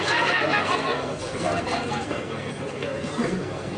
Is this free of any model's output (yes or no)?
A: no